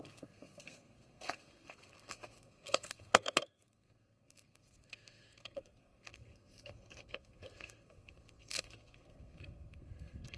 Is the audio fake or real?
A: fake